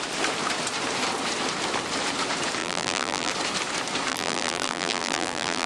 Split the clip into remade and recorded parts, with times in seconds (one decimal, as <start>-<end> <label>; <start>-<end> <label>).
0.0-2.6 recorded; 2.6-3.3 remade; 3.3-4.1 recorded; 4.1-5.7 remade